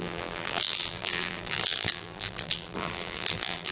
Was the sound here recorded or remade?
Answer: remade